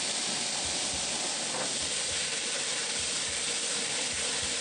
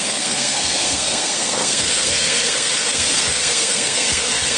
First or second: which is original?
first